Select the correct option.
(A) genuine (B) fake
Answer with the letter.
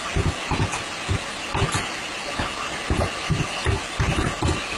A